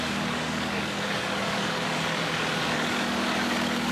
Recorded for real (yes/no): no